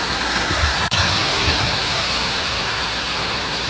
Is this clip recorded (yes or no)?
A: no